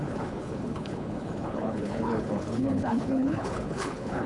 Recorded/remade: remade